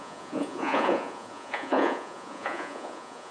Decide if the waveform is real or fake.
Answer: fake